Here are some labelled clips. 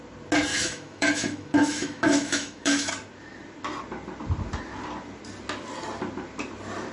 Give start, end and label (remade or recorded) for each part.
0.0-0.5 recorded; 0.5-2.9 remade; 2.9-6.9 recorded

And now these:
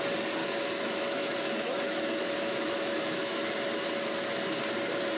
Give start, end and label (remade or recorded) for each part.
0.0-0.4 recorded; 0.4-3.5 remade; 3.5-5.2 recorded

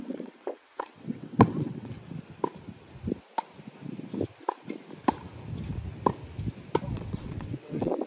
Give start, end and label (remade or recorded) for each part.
0.0-2.0 remade; 2.0-6.9 recorded; 6.9-8.1 remade

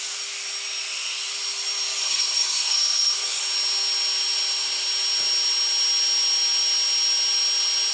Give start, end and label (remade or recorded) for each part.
0.0-2.0 recorded; 2.0-3.4 remade; 3.4-7.9 recorded